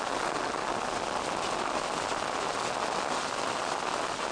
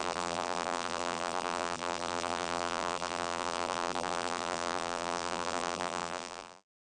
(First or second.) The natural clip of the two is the first